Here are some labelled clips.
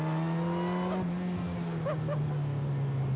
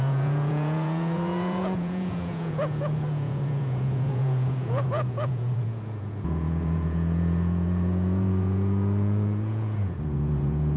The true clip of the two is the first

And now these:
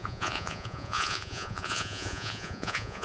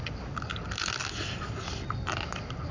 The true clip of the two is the second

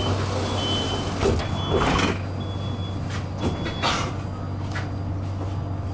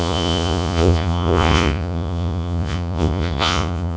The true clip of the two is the first